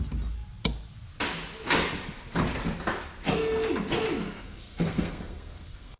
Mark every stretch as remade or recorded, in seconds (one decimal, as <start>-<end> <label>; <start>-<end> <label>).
0.0-4.3 recorded; 4.3-6.0 remade